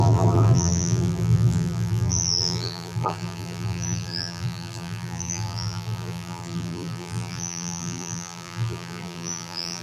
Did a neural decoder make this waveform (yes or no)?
yes